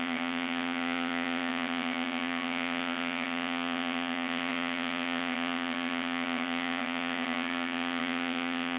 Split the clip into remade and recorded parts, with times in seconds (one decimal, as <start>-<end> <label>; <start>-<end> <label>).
0.0-8.8 remade